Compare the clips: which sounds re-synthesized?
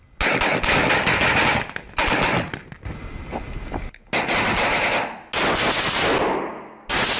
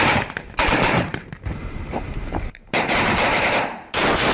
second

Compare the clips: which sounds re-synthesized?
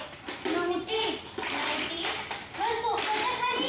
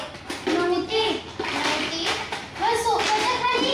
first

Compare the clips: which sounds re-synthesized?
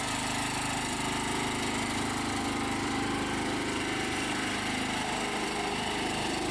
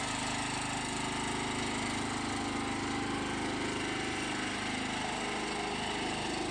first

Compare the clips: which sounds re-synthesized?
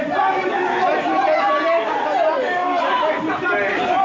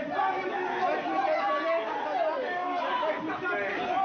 first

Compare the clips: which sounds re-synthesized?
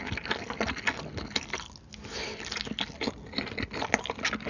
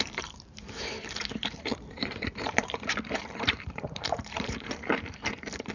second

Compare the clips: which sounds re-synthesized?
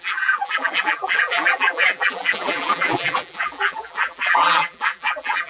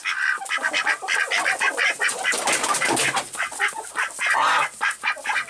first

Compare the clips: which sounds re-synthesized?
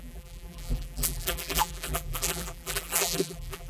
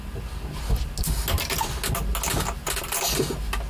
first